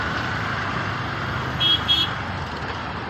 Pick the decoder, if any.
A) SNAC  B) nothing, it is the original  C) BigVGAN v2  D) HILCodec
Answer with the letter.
B